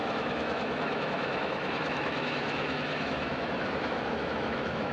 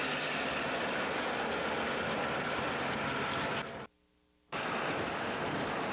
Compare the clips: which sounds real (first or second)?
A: second